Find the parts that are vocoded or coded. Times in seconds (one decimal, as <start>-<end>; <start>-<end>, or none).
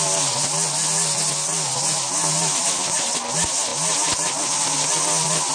none